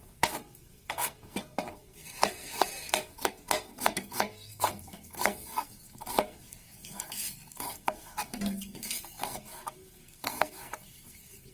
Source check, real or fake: fake